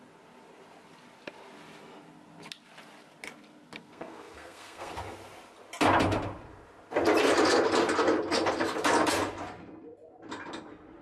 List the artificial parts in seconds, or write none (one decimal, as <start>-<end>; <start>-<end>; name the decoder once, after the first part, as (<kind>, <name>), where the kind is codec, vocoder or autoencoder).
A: 3.8-4.9 (codec, SNAC)